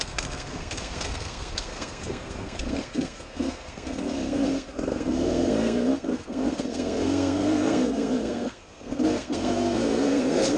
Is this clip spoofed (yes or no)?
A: yes